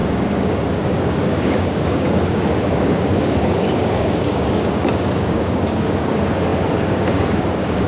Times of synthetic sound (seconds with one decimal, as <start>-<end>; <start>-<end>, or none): 0.0-7.9